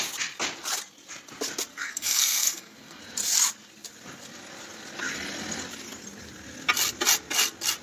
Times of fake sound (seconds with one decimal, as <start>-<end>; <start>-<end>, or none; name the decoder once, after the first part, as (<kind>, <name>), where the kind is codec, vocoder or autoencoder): 1.7-3.0 (codec, SNAC)